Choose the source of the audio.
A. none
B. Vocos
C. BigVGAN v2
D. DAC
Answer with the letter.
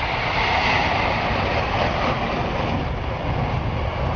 A